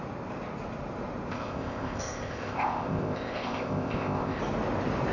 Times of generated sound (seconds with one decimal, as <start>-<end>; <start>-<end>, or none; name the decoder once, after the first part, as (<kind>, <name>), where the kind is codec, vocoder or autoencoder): 1.3-4.4 (codec, ZipCodec)